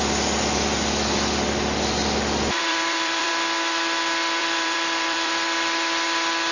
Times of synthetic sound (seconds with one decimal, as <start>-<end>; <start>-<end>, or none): 2.0-3.3; 4.4-5.3